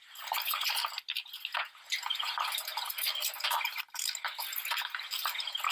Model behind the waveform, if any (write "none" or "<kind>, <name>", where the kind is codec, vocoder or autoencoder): none